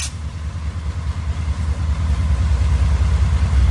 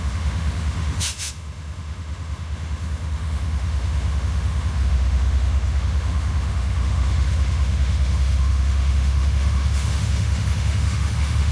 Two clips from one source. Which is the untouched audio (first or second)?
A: first